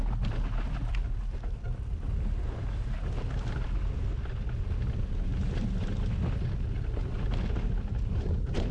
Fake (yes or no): no